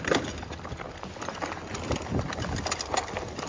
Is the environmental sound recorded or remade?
recorded